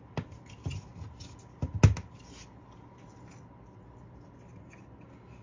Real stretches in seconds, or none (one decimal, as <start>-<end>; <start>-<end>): 0.0-5.4